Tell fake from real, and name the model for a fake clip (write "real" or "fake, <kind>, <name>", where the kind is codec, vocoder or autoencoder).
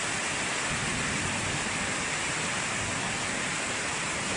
real